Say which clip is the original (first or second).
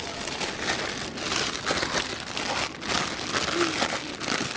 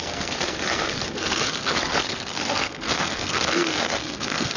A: first